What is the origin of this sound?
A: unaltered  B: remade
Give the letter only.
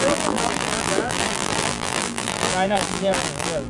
B